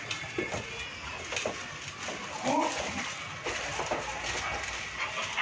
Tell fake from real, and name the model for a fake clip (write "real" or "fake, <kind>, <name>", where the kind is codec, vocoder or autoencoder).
real